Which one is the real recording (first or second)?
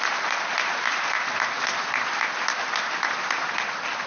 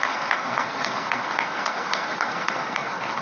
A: first